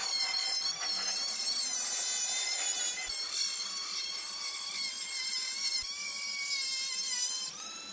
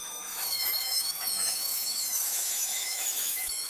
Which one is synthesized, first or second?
second